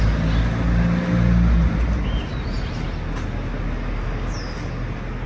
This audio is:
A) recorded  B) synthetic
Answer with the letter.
A